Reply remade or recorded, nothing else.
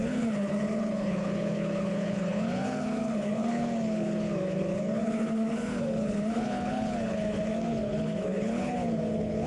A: remade